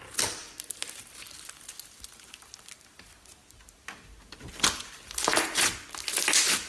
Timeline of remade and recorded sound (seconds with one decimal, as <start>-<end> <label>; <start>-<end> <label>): 0.0-6.7 recorded